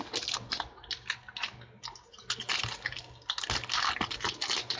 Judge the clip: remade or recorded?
recorded